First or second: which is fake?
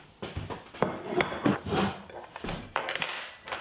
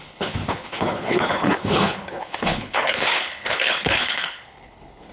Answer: second